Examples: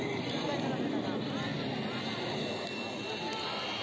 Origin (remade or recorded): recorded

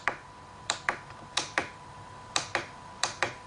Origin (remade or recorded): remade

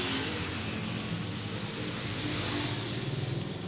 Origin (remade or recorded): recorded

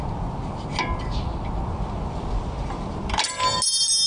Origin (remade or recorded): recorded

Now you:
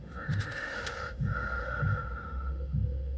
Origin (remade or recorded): remade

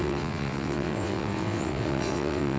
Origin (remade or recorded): remade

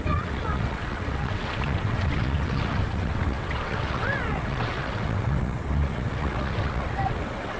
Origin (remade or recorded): remade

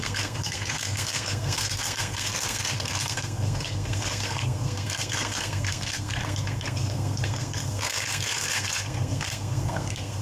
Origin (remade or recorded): remade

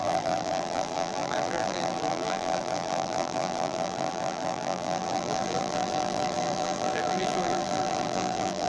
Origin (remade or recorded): remade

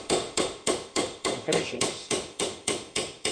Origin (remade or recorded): remade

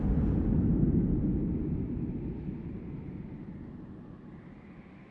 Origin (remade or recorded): recorded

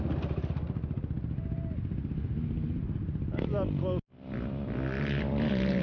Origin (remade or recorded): recorded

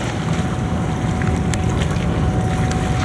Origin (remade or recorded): recorded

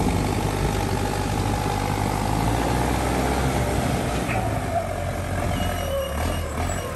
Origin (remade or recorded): recorded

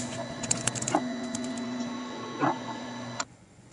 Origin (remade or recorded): remade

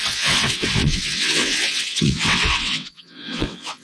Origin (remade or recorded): remade